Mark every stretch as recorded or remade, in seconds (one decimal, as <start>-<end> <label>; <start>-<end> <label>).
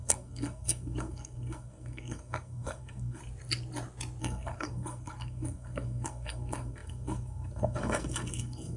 0.0-3.2 remade; 3.2-4.2 recorded; 4.2-8.8 remade